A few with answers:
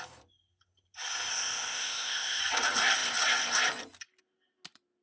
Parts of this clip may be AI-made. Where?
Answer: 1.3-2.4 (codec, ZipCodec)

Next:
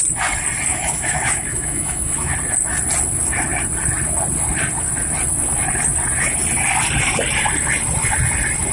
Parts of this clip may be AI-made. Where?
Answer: 0.7-2.3 (autoencoder, DAC-VAE)

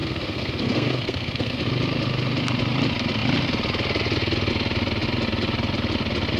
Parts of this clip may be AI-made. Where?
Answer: 0.0-1.6 (codec, SNAC)

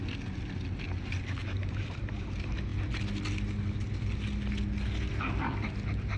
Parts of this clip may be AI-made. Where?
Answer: 1.4-2.1 (vocoder, BigVGAN v2)